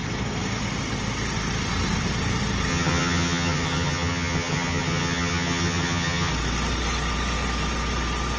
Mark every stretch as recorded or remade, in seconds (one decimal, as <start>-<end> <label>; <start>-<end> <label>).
0.0-2.7 recorded; 2.7-6.3 remade; 6.3-8.4 recorded